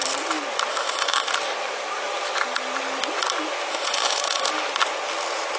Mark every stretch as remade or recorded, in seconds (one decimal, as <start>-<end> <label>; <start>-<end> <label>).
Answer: 0.0-0.7 recorded; 0.7-1.3 remade; 1.3-3.7 recorded; 3.7-4.5 remade; 4.5-5.6 recorded